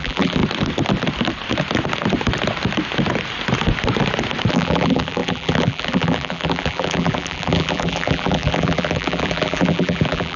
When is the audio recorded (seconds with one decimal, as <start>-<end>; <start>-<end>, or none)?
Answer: 0.4-4.5